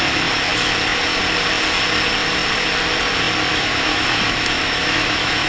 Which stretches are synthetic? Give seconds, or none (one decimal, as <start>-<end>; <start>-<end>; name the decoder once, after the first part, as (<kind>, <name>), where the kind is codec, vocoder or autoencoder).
3.5-5.5 (autoencoder, DAC-VAE)